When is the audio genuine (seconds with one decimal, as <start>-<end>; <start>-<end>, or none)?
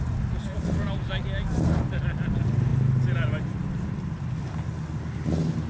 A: 0.0-5.7